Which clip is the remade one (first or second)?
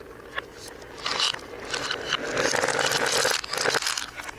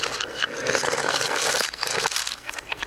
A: second